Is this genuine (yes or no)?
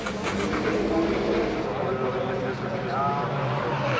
yes